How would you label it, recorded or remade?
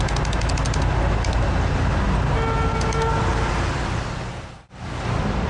recorded